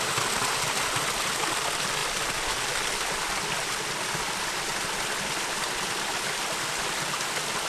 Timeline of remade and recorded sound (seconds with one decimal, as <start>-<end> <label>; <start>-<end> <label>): 0.0-2.0 recorded; 2.0-4.3 remade; 4.3-7.7 recorded